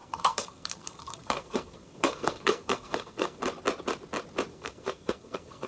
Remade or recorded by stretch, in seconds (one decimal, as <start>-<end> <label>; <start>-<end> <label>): 0.0-3.4 remade; 3.4-4.5 recorded; 4.5-5.7 remade